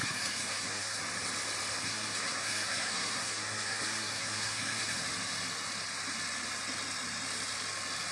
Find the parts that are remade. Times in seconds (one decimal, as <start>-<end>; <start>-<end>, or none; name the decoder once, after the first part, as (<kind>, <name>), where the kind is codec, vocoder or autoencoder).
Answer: 0.0-1.0 (codec, SNAC); 1.8-5.0